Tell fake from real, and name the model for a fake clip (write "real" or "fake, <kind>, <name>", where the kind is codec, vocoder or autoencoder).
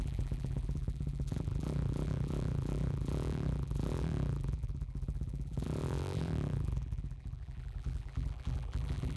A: fake, vocoder, BigVGAN v2